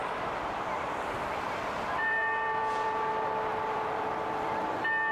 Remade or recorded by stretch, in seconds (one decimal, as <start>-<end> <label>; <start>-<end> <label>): 0.0-3.1 remade; 3.1-3.5 recorded; 3.5-4.6 remade; 4.6-5.1 recorded